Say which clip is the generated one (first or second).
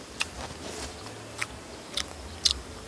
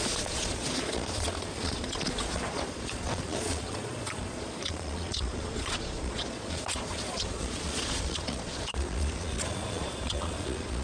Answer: second